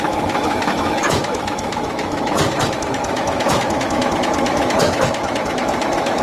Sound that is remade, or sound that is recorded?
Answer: remade